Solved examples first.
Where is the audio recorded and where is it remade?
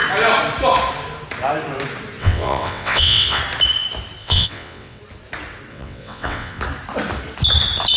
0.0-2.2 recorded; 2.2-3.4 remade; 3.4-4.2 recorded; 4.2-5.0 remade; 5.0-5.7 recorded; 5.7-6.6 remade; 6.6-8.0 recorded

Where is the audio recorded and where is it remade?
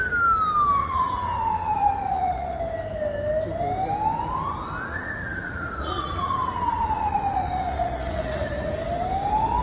0.0-0.8 recorded; 0.8-2.6 remade; 2.6-4.9 recorded; 4.9-8.7 remade; 8.7-9.6 recorded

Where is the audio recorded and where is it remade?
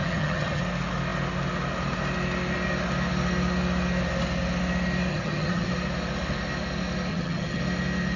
0.0-0.6 remade; 0.6-5.1 recorded; 5.1-5.7 remade; 5.7-7.1 recorded; 7.1-7.6 remade; 7.6-8.2 recorded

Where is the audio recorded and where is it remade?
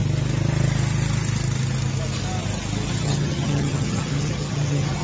0.0-2.9 recorded; 2.9-5.0 remade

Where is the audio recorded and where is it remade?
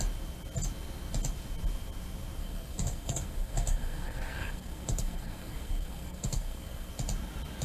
0.0-2.4 recorded; 2.4-6.9 remade; 6.9-7.6 recorded